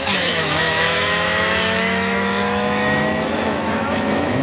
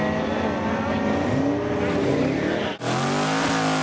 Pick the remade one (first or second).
first